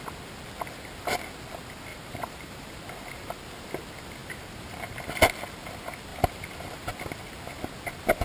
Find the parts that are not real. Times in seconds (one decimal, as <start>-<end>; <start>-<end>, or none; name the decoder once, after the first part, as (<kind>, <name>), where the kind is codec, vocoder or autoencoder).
1.9-2.8 (vocoder, BigVGAN v2); 4.2-5.1; 6.1-6.9